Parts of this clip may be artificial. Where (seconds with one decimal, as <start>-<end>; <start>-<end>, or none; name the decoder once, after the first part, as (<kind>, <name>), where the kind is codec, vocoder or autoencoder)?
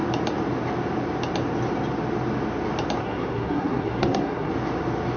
3.0-4.5 (codec, SNAC)